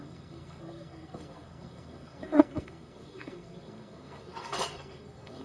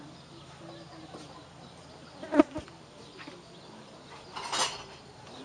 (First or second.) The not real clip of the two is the first